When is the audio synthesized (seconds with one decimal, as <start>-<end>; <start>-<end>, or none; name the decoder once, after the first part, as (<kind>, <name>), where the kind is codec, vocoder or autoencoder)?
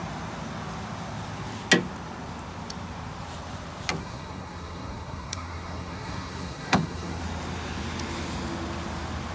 4.0-7.2 (codec, SNAC)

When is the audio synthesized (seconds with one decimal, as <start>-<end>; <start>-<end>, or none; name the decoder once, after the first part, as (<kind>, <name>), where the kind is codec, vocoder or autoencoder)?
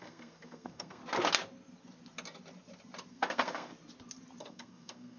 0.0-1.0 (codec, SNAC); 3.1-3.7; 4.4-5.2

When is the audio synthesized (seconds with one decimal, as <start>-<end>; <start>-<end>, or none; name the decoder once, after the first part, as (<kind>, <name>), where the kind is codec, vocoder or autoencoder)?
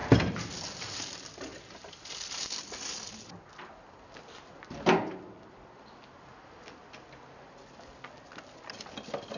none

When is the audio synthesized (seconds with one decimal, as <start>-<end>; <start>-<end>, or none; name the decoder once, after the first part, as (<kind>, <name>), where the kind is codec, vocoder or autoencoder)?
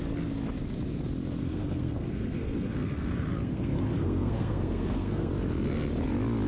1.4-5.3 (codec, SNAC)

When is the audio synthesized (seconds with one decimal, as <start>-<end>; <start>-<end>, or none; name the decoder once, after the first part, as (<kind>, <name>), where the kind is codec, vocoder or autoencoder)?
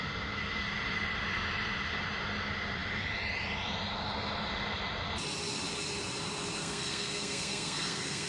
6.6-8.3 (codec, SNAC)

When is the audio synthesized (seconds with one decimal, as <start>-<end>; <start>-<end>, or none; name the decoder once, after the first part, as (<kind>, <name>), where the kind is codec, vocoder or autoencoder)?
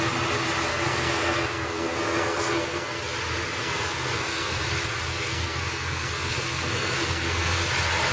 0.7-3.0 (codec, SNAC); 3.6-4.6; 5.1-7.6